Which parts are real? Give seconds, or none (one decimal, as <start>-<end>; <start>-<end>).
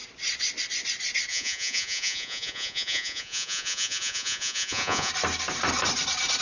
0.0-1.3; 5.1-6.4